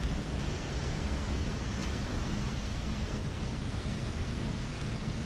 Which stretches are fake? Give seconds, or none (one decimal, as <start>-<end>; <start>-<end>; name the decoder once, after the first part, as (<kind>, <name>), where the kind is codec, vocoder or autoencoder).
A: 0.0-5.3 (codec, SNAC)